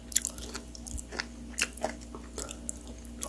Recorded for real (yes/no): yes